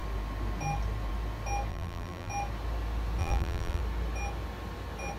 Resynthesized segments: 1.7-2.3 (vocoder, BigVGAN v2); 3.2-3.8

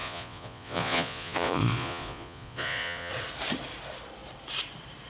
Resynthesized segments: 0.0-3.1 (vocoder, Vocos)

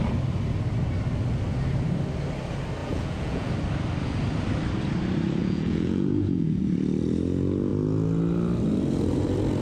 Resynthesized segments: 2.8-3.5 (vocoder, Vocos); 5.4-6.6

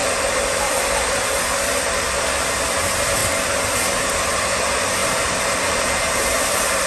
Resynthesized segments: 0.0-3.2 (vocoder, BigVGAN v2); 4.3-6.9

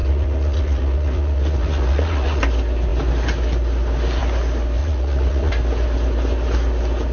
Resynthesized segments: 0.0-2.4 (vocoder, Vocos); 4.8-5.5

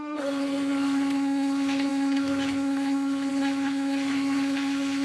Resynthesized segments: 0.0-5.0 (codec, SNAC)

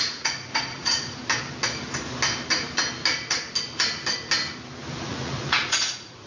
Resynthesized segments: 0.0-1.2 (vocoder, Vocos); 5.0-6.3

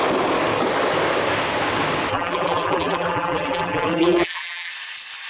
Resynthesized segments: 2.1-4.7 (vocoder, BigVGAN v2)